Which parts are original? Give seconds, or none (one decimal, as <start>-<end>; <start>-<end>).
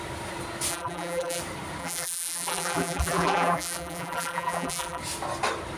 0.0-0.7; 1.4-1.8; 5.0-5.8